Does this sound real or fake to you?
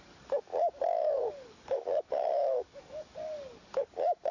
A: fake